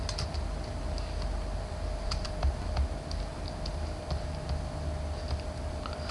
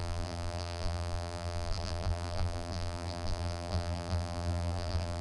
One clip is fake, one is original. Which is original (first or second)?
first